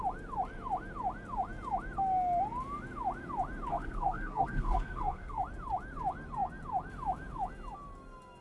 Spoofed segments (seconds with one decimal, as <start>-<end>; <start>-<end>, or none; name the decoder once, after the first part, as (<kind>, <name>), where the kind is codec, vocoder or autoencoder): 3.7-5.4 (codec, SNAC)